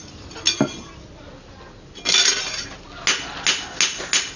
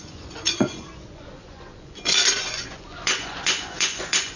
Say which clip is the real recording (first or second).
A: first